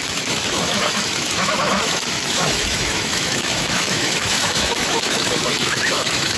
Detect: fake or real fake